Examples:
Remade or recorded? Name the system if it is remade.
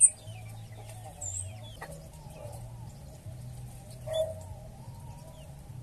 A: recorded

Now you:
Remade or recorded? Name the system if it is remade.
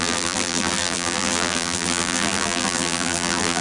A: remade, vocoder, BigVGAN v2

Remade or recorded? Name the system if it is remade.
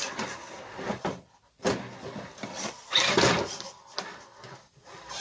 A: recorded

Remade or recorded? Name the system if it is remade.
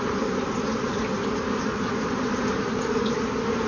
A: recorded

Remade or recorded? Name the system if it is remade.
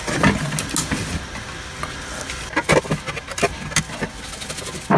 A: recorded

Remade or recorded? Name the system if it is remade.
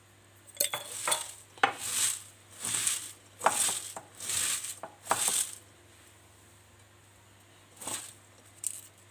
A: recorded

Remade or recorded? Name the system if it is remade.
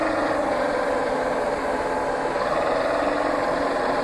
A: recorded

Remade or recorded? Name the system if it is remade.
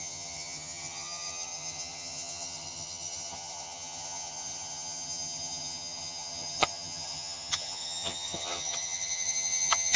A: remade, vocoder, HiFi-GAN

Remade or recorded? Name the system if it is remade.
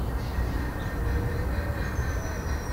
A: recorded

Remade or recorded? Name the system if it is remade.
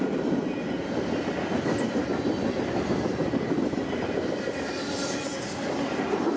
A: recorded